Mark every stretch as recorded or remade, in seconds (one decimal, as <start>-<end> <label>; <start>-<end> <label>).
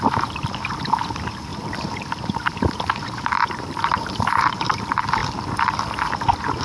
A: 0.0-1.5 recorded; 1.5-4.8 remade; 4.8-6.6 recorded